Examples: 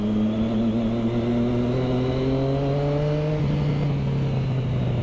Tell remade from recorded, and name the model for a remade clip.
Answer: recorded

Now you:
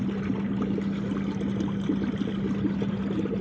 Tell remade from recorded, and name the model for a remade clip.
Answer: recorded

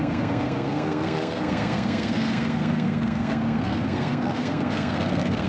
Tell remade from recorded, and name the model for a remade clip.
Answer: remade, codec, SNAC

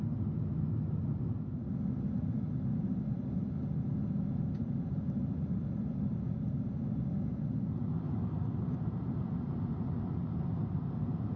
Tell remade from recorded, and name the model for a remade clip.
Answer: recorded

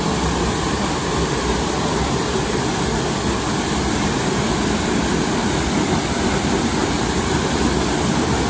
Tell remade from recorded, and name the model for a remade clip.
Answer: recorded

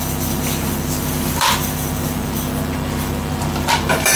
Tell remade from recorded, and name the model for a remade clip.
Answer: remade, vocoder, BigVGAN v2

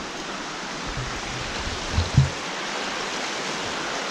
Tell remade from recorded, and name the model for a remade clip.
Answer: recorded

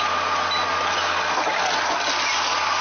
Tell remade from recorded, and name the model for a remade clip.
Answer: recorded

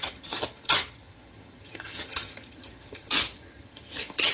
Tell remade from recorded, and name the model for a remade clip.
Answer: remade, vocoder, HiFi-GAN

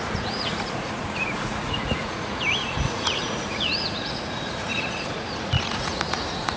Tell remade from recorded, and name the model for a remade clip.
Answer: remade, vocoder, Vocos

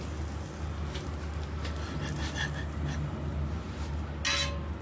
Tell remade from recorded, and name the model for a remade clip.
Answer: recorded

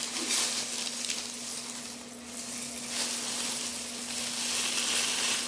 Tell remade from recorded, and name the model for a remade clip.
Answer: recorded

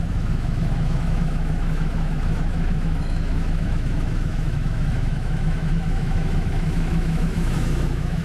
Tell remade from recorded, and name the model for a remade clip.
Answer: remade, autoencoder, DAC-VAE